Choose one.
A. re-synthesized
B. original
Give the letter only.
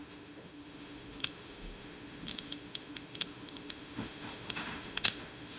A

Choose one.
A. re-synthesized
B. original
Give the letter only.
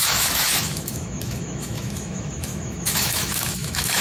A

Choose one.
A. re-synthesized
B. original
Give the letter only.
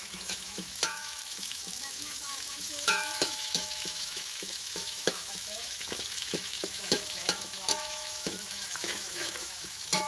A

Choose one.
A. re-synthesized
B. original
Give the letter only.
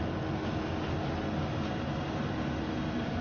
B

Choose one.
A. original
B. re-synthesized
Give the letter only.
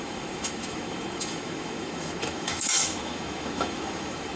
B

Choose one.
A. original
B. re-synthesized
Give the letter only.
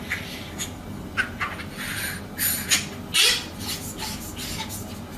A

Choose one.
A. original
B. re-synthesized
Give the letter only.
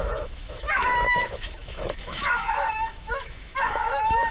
B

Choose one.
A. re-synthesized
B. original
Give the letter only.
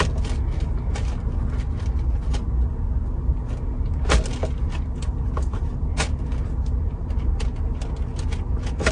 B